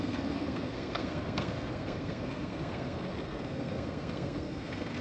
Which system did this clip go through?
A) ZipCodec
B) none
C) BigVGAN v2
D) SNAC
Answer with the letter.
D